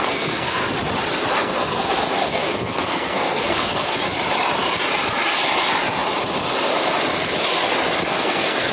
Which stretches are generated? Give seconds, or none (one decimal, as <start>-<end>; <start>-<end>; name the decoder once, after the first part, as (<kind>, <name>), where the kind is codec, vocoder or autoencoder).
0.0-0.6 (codec, SNAC); 1.4-3.9; 8.1-8.7